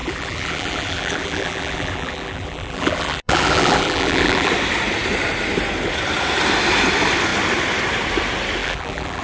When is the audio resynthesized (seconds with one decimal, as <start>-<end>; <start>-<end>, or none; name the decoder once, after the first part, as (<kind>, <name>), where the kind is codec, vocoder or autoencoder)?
0.0-4.5 (vocoder, BigVGAN v2); 8.6-9.2

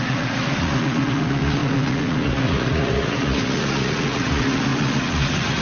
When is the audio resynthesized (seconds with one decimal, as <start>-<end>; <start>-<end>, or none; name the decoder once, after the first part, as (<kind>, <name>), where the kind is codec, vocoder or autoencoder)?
0.0-5.6 (vocoder, Vocos)

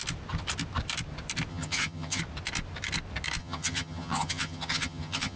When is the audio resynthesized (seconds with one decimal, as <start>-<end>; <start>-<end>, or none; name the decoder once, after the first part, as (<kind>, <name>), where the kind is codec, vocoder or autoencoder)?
1.5-2.2 (vocoder, HiFi-GAN); 3.4-5.4

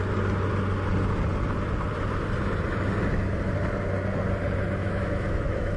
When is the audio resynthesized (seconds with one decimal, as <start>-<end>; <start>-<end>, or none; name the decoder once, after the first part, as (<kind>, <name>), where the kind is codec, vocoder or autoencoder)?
4.8-5.8 (autoencoder, DAC-VAE)

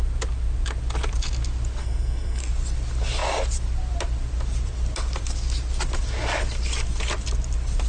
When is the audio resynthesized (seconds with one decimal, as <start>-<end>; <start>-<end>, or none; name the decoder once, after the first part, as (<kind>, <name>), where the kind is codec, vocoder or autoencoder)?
1.8-2.4 (codec, SNAC)